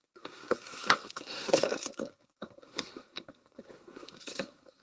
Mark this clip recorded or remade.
remade